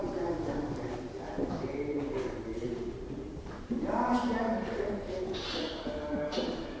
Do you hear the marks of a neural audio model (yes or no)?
yes